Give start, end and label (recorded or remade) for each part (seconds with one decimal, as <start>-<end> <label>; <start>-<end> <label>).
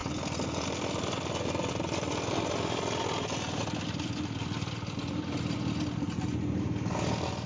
0.0-7.5 recorded